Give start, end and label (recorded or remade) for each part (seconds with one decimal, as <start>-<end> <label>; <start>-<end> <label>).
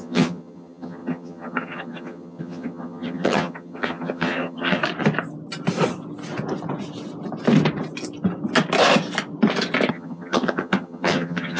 0.0-4.8 remade; 4.8-9.9 recorded; 9.9-11.6 remade